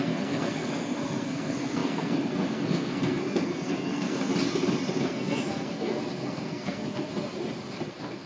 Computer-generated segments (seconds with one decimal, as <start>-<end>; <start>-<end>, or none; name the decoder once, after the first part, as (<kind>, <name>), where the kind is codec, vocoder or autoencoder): 0.0-4.3 (codec, SNAC); 5.0-7.1; 7.9-8.3